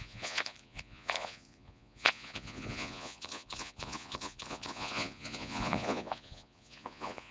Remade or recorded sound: remade